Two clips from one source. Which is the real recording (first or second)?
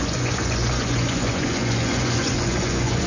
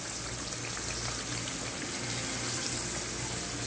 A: second